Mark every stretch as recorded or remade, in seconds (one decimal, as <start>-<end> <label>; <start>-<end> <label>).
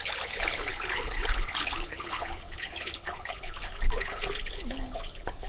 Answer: 0.0-5.5 remade